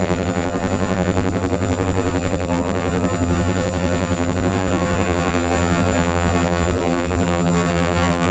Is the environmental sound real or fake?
fake